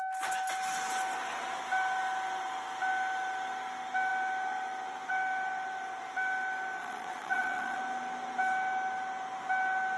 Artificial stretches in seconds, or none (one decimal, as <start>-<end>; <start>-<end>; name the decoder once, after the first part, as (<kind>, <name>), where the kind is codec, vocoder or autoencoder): 6.8-7.8 (vocoder, Vocos)